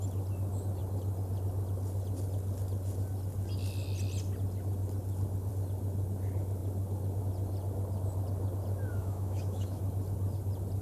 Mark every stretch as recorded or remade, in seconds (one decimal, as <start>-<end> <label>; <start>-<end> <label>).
0.0-8.9 recorded; 8.9-9.8 remade; 9.8-10.8 recorded